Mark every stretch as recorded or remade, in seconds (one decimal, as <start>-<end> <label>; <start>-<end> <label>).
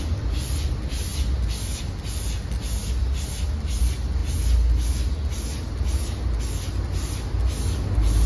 0.0-8.3 recorded